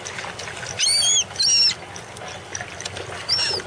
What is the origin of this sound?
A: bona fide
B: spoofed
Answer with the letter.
A